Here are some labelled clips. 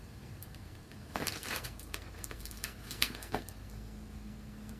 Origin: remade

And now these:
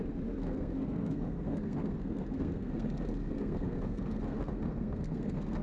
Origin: remade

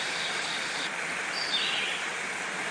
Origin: recorded